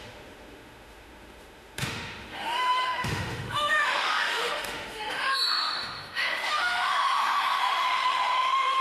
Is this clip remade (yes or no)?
yes